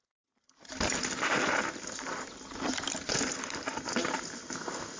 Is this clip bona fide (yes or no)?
yes